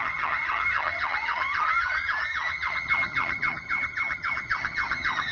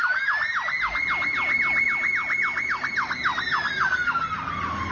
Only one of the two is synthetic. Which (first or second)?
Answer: first